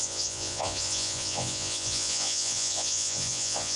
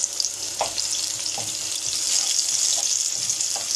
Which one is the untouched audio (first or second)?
second